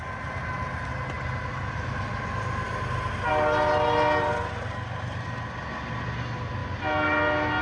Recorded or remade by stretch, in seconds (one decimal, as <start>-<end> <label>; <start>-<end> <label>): 0.0-7.6 recorded